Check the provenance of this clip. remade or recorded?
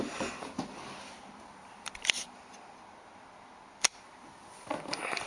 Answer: remade